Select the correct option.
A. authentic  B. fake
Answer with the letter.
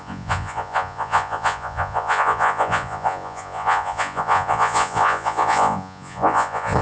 B